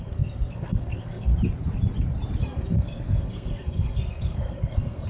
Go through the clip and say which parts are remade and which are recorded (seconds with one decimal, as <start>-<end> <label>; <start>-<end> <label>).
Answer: 0.0-1.3 remade; 1.3-2.4 recorded; 2.4-5.1 remade